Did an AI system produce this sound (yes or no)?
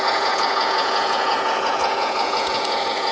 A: yes